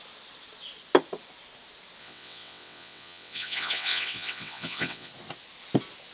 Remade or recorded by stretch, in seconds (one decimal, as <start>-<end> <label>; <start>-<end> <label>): 0.0-2.0 recorded; 2.0-5.1 remade; 5.1-6.1 recorded